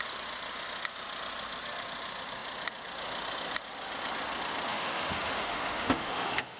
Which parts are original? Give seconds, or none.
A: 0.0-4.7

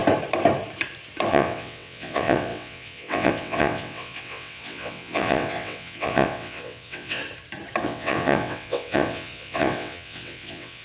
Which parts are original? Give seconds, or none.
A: 0.0-1.3; 7.2-7.8

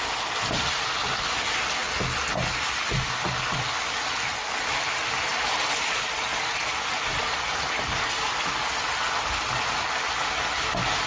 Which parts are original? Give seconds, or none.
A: 0.0-11.1

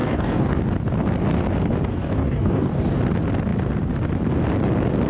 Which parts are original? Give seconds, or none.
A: 0.6-1.9; 3.0-5.1

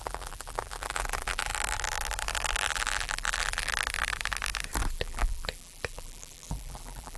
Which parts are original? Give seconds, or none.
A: 1.5-2.7; 3.7-4.9